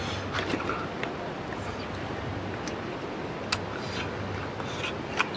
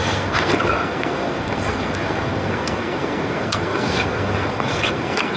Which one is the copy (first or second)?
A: second